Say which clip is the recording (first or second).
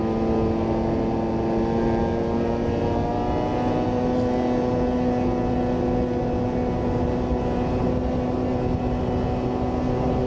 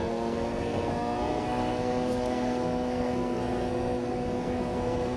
first